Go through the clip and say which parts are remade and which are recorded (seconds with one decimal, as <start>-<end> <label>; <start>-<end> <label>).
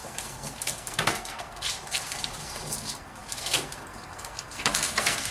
0.0-5.3 remade